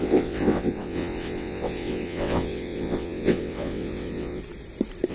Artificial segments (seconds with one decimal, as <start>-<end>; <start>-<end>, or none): 0.0-4.4